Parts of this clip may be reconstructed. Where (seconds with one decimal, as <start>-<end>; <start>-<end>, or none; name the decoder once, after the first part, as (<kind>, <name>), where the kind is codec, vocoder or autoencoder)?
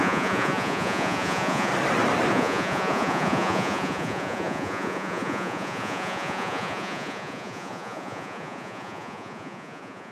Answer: 0.0-1.7 (vocoder, Vocos); 2.3-10.1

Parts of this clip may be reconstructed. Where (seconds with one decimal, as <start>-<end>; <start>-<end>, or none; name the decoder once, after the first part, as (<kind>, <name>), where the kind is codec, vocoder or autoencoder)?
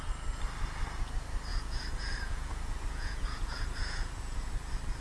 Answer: 1.5-4.5 (vocoder, Vocos)